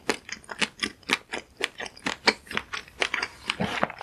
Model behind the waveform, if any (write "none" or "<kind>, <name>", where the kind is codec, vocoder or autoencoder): none